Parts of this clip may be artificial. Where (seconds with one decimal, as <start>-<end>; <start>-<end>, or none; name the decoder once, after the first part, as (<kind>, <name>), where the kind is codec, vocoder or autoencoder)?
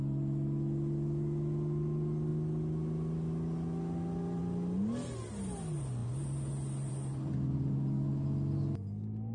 none